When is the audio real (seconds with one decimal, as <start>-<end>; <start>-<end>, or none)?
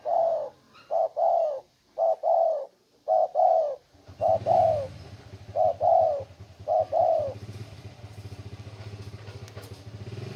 0.0-10.4